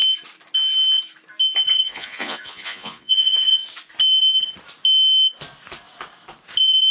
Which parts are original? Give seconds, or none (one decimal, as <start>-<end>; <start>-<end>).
0.0-1.7; 3.6-6.9